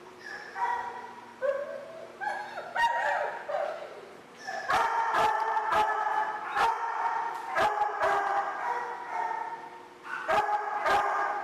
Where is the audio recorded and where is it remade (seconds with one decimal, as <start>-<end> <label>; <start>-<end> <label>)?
0.0-2.4 remade; 2.4-4.2 recorded; 4.2-8.3 remade; 8.3-11.4 recorded